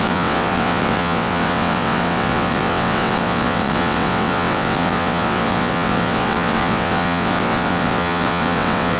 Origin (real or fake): fake